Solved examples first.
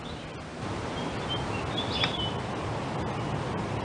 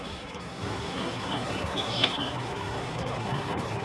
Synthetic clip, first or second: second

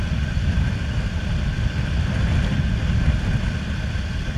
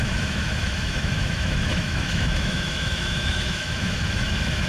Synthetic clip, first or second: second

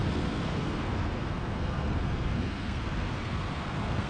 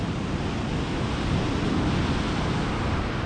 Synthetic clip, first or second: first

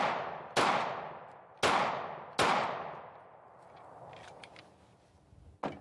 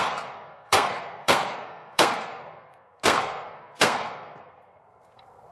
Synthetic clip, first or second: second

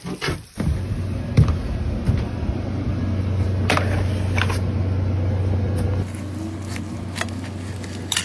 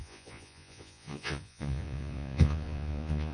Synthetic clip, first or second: second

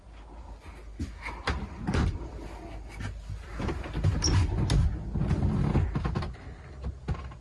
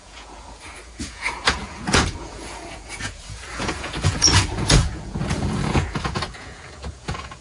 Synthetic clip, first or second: second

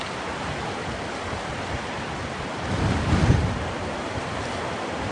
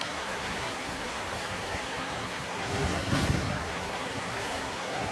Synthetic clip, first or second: second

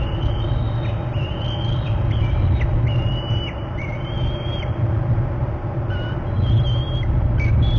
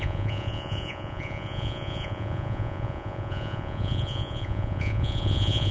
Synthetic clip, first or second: second